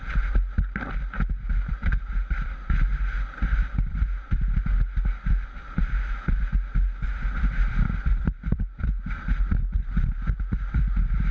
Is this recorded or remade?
recorded